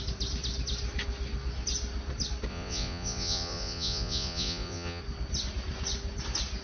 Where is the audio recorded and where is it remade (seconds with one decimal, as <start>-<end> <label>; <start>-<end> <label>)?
0.0-2.5 recorded; 2.5-5.0 remade; 5.0-6.6 recorded